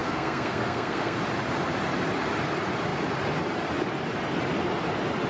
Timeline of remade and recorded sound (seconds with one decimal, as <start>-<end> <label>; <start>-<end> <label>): 0.0-1.2 remade; 1.2-5.3 recorded